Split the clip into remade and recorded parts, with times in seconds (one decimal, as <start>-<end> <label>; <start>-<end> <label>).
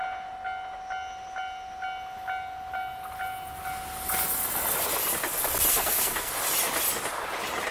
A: 0.0-5.7 recorded; 5.7-6.3 remade; 6.3-7.7 recorded